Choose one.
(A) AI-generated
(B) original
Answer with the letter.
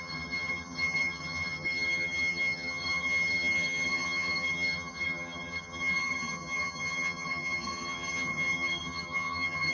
A